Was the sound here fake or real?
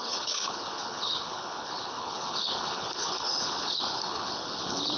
fake